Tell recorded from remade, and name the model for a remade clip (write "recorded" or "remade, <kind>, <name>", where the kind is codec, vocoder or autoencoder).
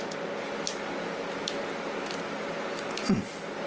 recorded